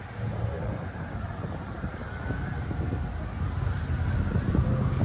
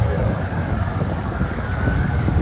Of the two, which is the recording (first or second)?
first